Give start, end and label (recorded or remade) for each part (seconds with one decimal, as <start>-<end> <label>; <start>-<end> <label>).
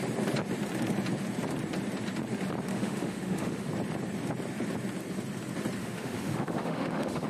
0.0-2.7 recorded; 2.7-3.7 remade; 3.7-5.8 recorded; 5.8-7.3 remade